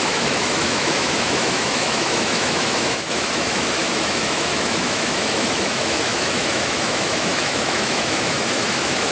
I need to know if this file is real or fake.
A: fake